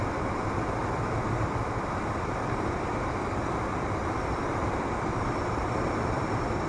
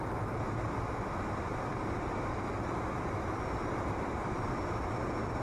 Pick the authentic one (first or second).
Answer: second